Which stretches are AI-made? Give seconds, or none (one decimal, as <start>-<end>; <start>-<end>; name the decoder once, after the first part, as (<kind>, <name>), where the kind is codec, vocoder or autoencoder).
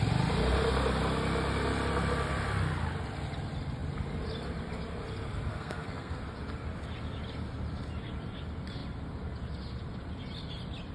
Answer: 5.5-6.2 (codec, SNAC)